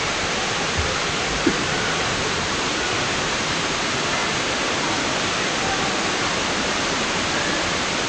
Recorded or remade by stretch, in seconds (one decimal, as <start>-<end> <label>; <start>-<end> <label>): 0.0-8.1 recorded